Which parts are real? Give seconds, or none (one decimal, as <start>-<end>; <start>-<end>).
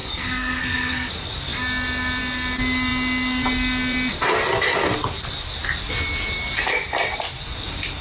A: 1.1-8.0